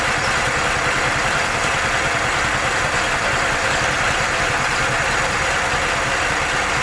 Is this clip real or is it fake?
real